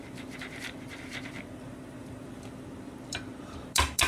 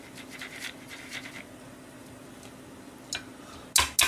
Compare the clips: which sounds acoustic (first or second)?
second